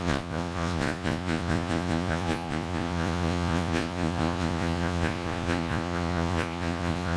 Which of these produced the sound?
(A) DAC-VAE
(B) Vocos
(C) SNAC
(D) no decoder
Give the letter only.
B